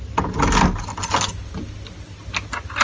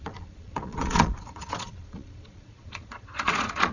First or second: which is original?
first